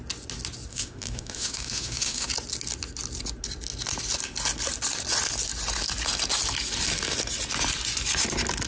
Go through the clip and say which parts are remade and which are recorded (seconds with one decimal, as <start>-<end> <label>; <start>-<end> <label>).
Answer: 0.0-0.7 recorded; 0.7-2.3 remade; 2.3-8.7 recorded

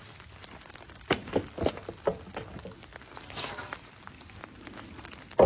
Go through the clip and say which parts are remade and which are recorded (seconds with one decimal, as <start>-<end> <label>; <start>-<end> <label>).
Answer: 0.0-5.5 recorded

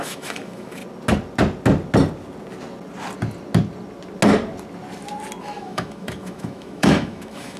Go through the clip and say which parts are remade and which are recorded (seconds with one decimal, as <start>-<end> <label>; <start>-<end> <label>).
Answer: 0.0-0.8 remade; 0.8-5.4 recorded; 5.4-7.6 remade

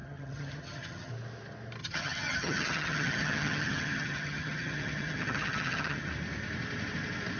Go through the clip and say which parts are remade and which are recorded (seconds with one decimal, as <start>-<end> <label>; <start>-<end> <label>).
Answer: 0.0-1.1 remade; 1.1-1.8 recorded; 1.8-6.1 remade; 6.1-7.4 recorded

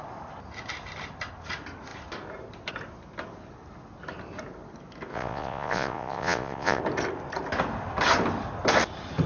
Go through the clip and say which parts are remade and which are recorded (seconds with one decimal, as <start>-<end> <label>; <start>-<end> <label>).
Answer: 0.0-5.1 recorded; 5.1-6.8 remade; 6.8-9.3 recorded

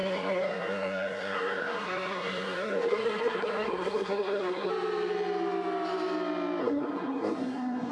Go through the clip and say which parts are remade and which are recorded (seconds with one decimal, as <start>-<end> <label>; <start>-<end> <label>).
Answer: 0.0-4.7 remade; 4.7-6.6 recorded; 6.6-7.9 remade

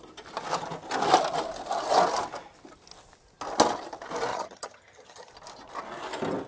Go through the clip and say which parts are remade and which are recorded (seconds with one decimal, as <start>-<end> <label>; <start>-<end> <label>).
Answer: 0.0-4.3 recorded; 4.3-5.3 remade; 5.3-6.5 recorded

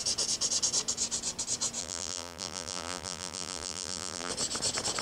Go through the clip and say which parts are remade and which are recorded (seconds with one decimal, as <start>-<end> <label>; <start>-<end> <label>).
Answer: 0.0-1.8 recorded; 1.8-4.3 remade; 4.3-5.0 recorded